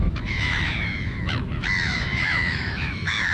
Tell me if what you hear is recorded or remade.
remade